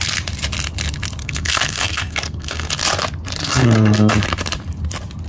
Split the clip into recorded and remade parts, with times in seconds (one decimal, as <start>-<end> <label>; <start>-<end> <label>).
0.0-1.2 recorded; 1.2-2.7 remade; 2.7-3.4 recorded; 3.4-4.1 remade; 4.1-5.3 recorded